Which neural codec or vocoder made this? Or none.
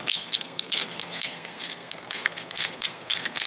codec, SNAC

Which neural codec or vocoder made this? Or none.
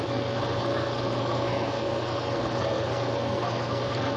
codec, SNAC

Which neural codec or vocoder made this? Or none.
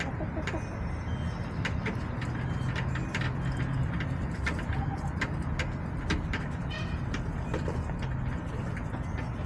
none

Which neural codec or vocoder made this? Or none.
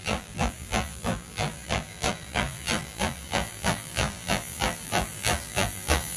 vocoder, BigVGAN v2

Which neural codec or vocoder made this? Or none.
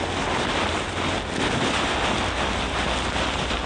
none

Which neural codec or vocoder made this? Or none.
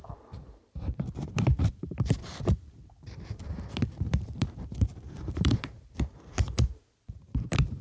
vocoder, BigVGAN v2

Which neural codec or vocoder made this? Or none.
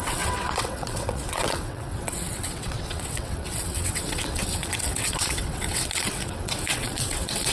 vocoder, WaveNeXt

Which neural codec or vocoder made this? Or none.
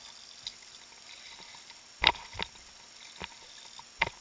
none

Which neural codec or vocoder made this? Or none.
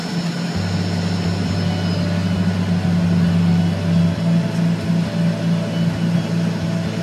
none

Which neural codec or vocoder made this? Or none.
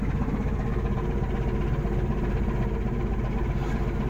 none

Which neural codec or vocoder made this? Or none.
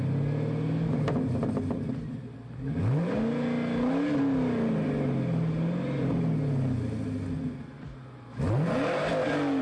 none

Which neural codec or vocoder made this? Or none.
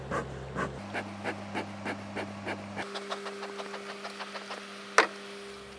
none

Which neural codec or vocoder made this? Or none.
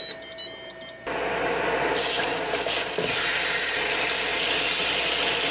none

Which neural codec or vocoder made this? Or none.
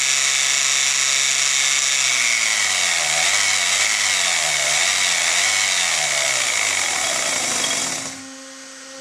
none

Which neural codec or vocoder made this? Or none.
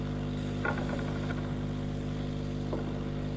none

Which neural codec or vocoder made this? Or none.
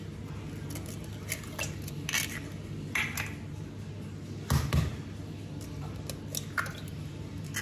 none